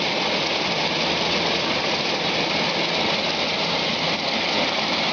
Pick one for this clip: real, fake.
real